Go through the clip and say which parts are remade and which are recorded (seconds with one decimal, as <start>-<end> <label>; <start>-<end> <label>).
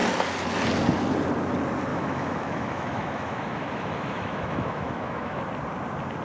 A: 0.0-1.9 recorded; 1.9-5.4 remade; 5.4-6.2 recorded